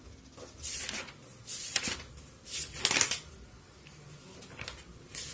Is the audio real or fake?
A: real